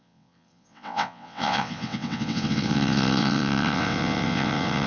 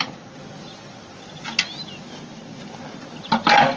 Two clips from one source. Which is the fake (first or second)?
first